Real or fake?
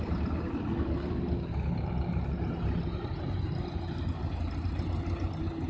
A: real